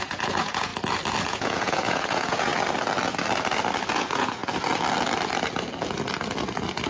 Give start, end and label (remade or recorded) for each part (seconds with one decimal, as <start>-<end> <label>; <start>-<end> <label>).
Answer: 0.0-0.7 remade; 0.7-1.2 recorded; 1.2-2.5 remade; 2.5-3.9 recorded; 3.9-4.4 remade; 4.4-6.9 recorded